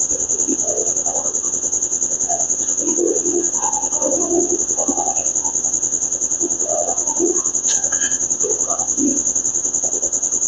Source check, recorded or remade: remade